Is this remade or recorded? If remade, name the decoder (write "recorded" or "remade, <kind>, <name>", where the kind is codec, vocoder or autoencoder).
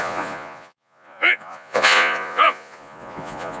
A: remade, vocoder, Vocos